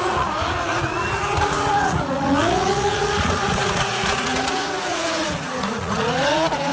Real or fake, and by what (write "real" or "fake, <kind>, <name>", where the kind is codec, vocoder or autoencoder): fake, vocoder, Vocos